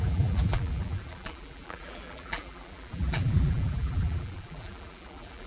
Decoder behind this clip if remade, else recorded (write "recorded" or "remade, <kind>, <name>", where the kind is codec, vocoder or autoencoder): remade, vocoder, BigVGAN v2